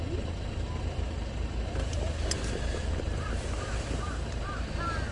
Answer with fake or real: real